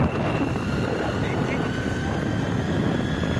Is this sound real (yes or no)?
yes